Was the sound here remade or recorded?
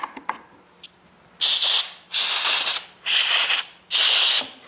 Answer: recorded